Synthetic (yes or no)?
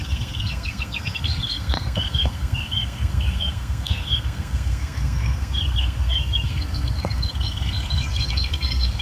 yes